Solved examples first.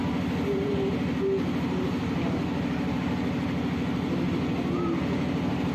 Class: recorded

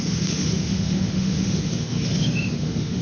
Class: remade